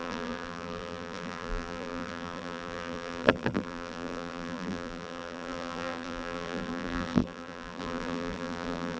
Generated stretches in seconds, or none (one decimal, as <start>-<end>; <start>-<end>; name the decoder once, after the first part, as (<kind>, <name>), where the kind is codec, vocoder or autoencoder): 0.0-9.0 (vocoder, BigVGAN v2)